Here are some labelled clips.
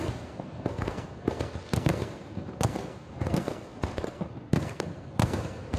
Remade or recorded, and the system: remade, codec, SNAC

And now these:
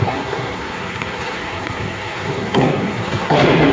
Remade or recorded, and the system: remade, codec, SNAC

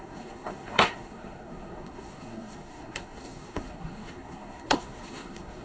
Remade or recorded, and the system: remade, codec, SNAC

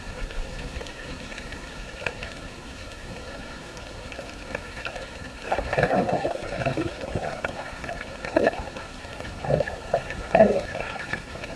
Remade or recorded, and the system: remade, codec, SNAC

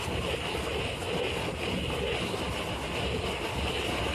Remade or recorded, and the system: recorded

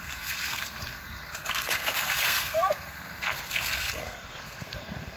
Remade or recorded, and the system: remade, codec, SNAC